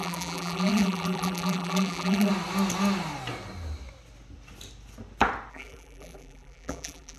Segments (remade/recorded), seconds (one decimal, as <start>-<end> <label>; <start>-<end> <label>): 0.0-2.3 remade; 2.3-5.5 recorded; 5.5-7.2 remade